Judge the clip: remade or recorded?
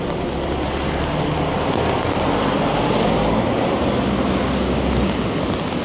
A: recorded